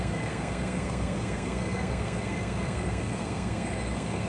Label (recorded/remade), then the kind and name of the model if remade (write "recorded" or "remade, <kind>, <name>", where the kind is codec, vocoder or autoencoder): remade, codec, SNAC